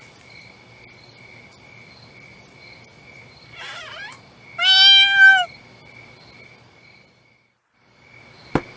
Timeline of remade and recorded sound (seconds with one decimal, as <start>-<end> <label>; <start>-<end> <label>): 0.0-8.8 recorded